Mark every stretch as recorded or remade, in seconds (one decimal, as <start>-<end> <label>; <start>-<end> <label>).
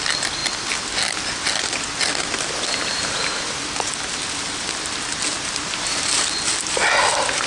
0.0-7.5 recorded